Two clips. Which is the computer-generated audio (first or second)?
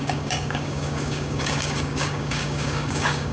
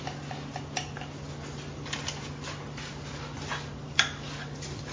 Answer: first